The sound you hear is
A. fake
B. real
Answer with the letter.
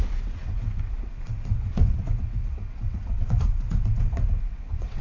A